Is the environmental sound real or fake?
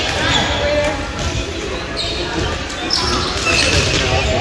real